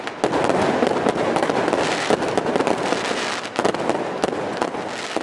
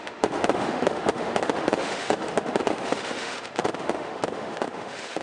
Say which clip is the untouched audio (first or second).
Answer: first